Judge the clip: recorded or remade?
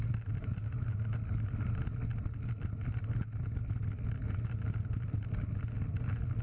recorded